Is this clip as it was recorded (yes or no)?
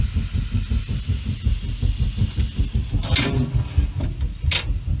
yes